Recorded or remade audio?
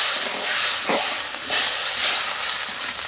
recorded